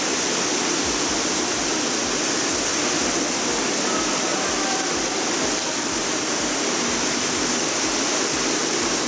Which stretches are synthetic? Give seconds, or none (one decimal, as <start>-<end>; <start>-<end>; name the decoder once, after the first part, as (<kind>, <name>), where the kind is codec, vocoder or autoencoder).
none

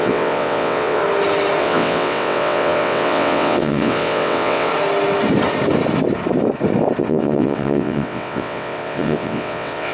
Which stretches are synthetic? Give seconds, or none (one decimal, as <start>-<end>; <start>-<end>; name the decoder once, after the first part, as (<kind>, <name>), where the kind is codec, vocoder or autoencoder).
0.0-1.0 (vocoder, WaveNeXt); 1.6-4.7; 7.0-9.9

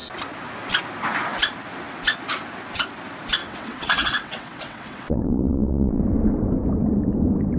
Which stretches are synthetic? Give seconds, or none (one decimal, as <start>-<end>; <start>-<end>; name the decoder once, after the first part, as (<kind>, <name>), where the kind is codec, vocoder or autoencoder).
3.4-6.0 (vocoder, WaveNeXt)

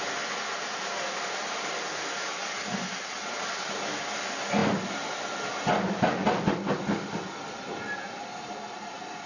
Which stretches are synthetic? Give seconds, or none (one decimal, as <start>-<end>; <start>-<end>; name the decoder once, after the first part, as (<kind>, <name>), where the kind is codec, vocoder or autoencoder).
3.0-3.7 (vocoder, WaveNeXt)